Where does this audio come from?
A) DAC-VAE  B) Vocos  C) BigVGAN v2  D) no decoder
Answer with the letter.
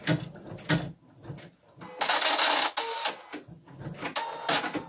D